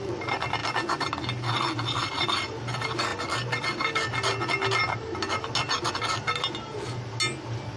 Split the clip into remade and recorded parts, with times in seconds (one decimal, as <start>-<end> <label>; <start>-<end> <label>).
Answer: 0.0-7.8 recorded